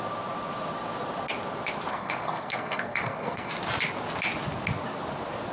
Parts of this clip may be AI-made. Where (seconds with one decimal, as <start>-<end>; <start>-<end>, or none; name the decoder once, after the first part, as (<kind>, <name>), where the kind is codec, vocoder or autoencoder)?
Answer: 1.9-3.5 (codec, SNAC)